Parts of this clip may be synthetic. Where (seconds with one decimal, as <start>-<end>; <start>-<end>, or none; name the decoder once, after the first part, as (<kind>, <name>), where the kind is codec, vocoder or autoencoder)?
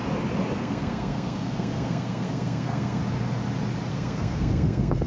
0.6-3.0 (codec, SNAC); 3.9-5.1